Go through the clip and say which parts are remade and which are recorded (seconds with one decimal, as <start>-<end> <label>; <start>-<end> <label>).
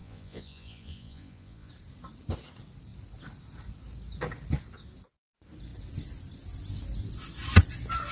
0.0-1.7 remade; 1.7-8.1 recorded